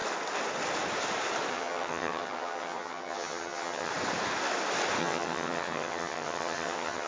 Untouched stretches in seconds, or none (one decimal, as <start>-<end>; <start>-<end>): 0.0-1.5; 3.9-5.0

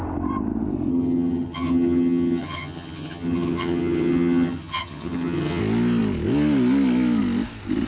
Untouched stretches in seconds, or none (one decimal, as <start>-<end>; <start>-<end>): 0.0-0.9; 5.6-7.9

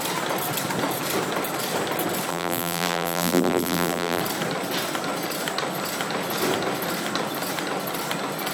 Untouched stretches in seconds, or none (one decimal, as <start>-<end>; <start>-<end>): 0.0-2.3; 4.2-8.5

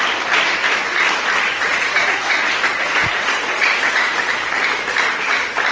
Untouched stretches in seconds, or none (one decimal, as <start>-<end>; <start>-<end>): 0.0-1.7; 4.2-5.7

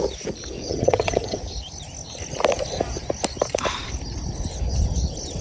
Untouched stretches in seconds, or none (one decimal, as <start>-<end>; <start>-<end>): 0.0-0.7; 1.4-5.4

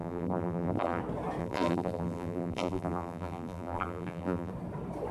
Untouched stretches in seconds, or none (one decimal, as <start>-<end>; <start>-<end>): 1.0-1.4; 4.5-5.1

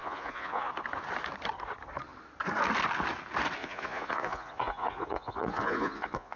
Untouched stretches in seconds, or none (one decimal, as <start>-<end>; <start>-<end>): 0.7-3.6

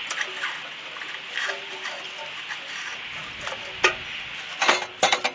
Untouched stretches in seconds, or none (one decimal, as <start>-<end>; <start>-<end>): 0.0-5.3